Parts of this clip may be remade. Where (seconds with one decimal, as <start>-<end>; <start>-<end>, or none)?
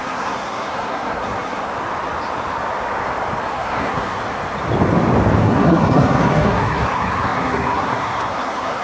0.0-1.7; 3.4-4.2; 5.4-8.8